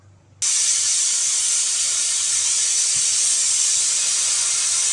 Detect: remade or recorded recorded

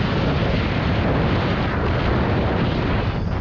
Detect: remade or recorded recorded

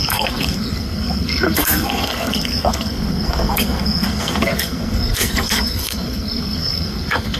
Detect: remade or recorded remade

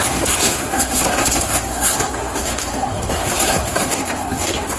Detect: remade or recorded remade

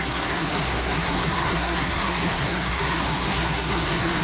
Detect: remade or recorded remade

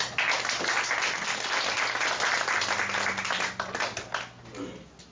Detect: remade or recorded recorded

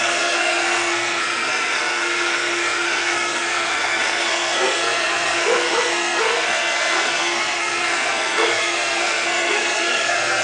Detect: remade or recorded remade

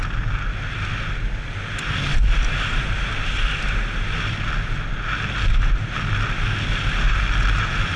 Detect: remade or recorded recorded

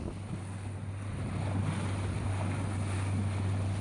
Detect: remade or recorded recorded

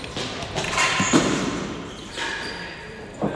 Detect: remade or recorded recorded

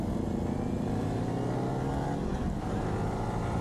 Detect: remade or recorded recorded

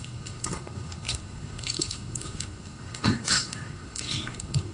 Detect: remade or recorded remade